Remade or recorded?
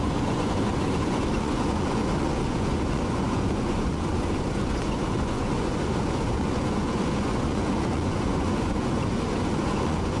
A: remade